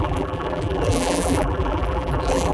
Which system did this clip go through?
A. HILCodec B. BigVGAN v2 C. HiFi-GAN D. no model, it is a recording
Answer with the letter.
B